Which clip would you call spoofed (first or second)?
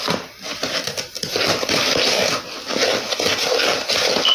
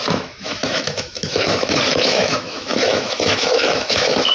second